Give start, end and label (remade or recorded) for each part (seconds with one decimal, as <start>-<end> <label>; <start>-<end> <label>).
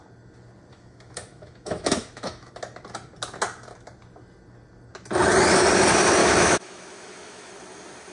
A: 0.0-0.7 recorded; 0.7-2.5 remade; 2.5-6.2 recorded; 6.2-7.5 remade; 7.5-8.1 recorded